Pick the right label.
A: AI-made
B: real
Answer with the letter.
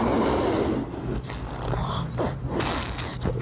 B